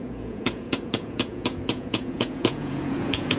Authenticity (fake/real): fake